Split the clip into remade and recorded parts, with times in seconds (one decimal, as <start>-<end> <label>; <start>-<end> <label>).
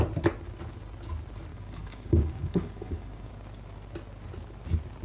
0.0-1.5 recorded; 1.5-3.3 remade; 3.3-5.0 recorded